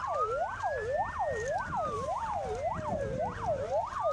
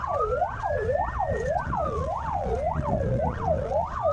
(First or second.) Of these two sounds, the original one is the first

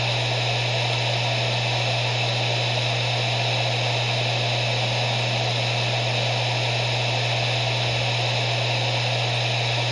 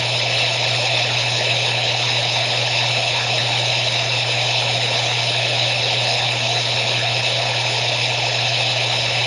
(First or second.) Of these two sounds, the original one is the first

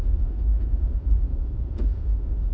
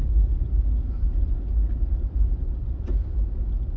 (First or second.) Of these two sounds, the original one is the second